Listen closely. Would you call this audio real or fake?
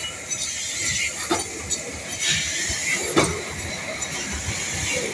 real